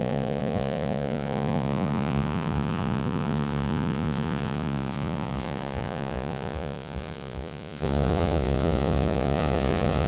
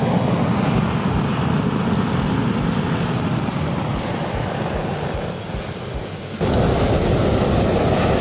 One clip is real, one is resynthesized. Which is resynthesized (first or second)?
first